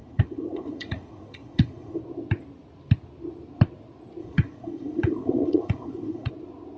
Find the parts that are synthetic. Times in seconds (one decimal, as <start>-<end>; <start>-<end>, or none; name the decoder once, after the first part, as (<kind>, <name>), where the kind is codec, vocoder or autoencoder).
0.0-2.0 (vocoder, Vocos); 4.2-6.3

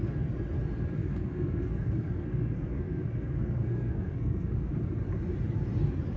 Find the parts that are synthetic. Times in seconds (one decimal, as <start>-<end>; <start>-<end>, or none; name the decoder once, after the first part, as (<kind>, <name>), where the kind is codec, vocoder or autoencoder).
1.0-4.7 (codec, SNAC)

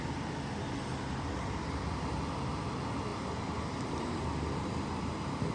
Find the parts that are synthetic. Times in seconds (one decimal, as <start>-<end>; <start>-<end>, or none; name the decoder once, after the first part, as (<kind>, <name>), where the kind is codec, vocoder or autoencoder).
none

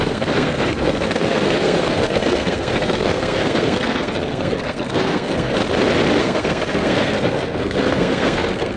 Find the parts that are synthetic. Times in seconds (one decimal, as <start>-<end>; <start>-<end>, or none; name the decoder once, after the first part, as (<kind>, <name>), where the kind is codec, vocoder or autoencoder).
0.0-5.6 (codec, SNAC); 6.2-8.8

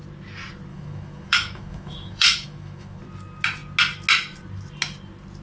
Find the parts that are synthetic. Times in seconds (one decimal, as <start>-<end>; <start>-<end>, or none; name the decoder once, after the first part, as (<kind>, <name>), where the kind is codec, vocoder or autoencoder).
0.7-3.0 (autoencoder, DAC-VAE)

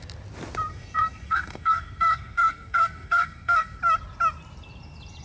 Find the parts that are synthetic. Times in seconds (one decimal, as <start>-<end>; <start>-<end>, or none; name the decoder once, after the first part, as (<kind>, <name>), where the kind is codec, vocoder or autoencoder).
0.7-3.8 (codec, SNAC)